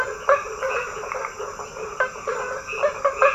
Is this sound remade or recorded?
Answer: recorded